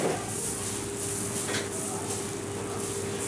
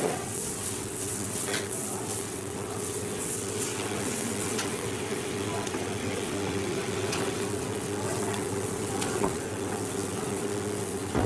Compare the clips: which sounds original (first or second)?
first